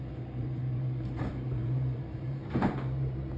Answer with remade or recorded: remade